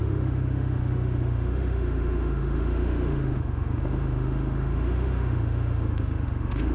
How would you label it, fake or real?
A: fake